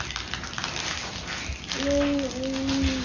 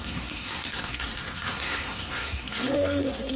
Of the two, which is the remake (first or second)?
second